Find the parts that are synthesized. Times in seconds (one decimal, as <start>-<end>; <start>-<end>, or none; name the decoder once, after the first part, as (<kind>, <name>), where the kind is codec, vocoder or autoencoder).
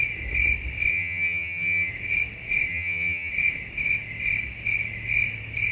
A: 0.9-1.9 (vocoder, HiFi-GAN); 2.7-3.3